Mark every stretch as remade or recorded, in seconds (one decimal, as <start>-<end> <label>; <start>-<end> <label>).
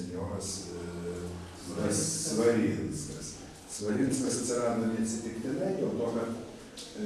0.0-3.6 recorded; 3.6-4.4 remade; 4.4-7.1 recorded